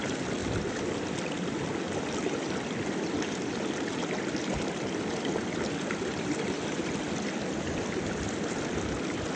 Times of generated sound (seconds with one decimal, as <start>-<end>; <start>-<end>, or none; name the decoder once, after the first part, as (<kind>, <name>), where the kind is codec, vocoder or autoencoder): none